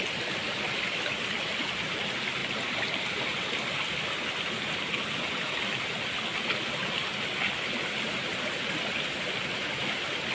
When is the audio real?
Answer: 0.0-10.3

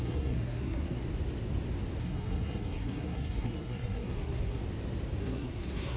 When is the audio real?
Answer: 1.0-2.0; 4.6-5.2